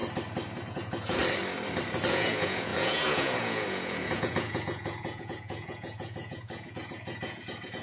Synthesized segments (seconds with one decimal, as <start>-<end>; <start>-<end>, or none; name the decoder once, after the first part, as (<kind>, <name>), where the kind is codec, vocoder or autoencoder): 0.7-1.2 (vocoder, Vocos); 2.1-7.8